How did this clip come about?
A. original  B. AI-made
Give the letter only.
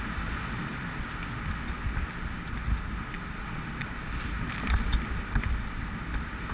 A